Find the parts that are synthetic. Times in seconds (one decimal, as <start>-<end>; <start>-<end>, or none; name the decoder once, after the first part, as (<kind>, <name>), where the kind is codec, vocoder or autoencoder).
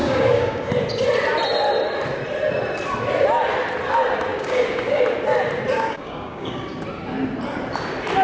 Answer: 0.0-0.7 (codec, DAC); 4.3-5.0; 5.7-6.8